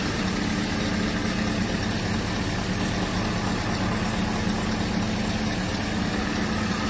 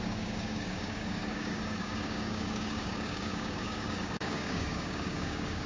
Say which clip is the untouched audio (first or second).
first